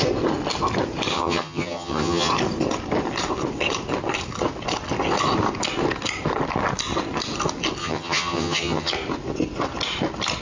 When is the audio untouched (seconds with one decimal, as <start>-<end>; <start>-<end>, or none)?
0.0-1.1; 2.3-7.8; 8.9-10.4